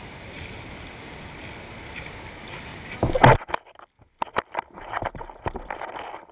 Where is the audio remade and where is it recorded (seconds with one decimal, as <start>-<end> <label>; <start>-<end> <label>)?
0.0-6.3 recorded